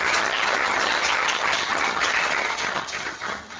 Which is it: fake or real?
fake